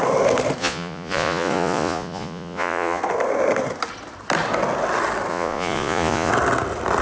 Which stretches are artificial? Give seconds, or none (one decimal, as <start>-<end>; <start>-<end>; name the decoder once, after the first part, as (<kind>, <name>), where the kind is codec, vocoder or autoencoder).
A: 0.6-3.0 (vocoder, Vocos); 5.3-6.3